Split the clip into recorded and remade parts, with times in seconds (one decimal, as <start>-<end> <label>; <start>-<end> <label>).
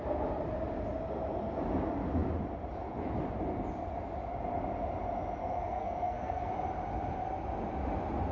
0.0-5.4 recorded; 5.4-6.5 remade; 6.5-8.3 recorded